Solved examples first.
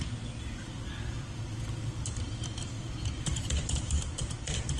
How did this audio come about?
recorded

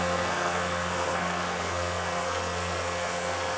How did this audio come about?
remade